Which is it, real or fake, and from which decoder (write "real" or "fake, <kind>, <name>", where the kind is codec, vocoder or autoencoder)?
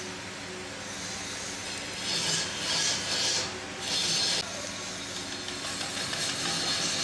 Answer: real